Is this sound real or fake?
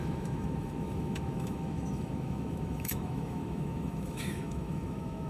fake